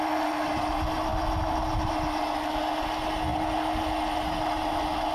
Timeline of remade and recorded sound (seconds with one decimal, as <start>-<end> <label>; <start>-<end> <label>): 0.0-5.1 recorded